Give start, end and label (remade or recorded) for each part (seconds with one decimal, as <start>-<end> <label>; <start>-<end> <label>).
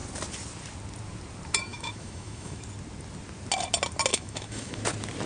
0.0-1.7 recorded; 1.7-2.6 remade; 2.6-4.1 recorded; 4.1-4.8 remade; 4.8-5.3 recorded